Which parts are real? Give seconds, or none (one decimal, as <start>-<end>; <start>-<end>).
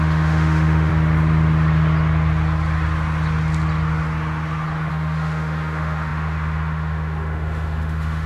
0.9-4.9